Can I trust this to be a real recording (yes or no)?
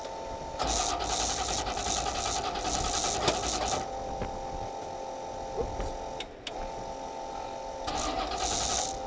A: yes